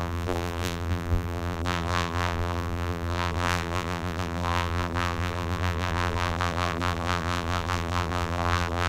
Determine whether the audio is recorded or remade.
remade